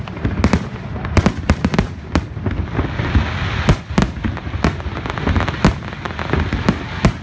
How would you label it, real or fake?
real